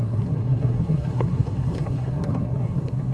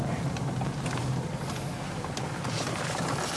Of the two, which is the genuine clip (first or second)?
second